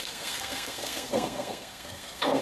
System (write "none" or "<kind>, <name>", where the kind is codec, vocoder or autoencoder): codec, SNAC